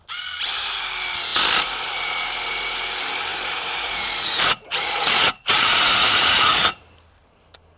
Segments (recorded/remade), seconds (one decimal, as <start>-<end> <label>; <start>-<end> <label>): 0.0-3.3 recorded; 3.3-6.8 remade; 6.8-7.8 recorded